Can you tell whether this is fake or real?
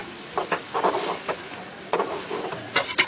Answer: real